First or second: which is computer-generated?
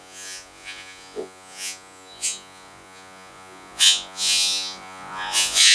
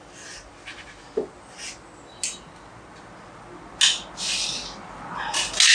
first